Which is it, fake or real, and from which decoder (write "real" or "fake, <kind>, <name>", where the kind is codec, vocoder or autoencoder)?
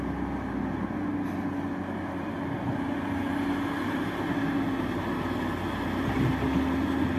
real